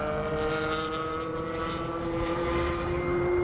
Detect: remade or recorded remade